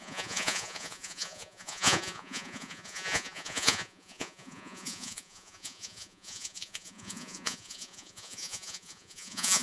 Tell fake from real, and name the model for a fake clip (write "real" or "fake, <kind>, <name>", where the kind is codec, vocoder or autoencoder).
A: fake, vocoder, Vocos